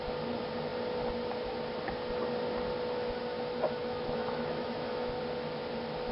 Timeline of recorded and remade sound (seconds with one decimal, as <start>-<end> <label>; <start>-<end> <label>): 0.0-3.8 recorded; 3.8-5.2 remade; 5.2-6.1 recorded